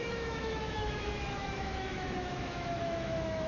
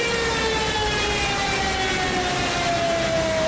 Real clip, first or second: second